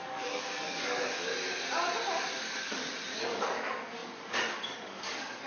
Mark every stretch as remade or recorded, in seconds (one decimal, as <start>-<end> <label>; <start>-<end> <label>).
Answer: 0.0-1.3 remade; 1.3-2.3 recorded; 2.3-5.5 remade